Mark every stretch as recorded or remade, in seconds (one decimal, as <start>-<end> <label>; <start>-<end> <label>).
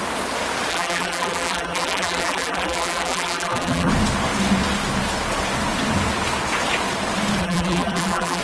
0.0-0.7 recorded; 0.7-3.9 remade; 3.9-7.4 recorded; 7.4-8.4 remade